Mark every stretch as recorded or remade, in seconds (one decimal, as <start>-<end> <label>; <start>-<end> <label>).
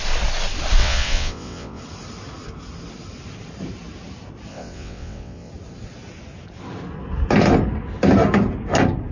0.0-0.8 recorded; 0.8-1.8 remade; 1.8-4.5 recorded; 4.5-5.5 remade; 5.5-9.1 recorded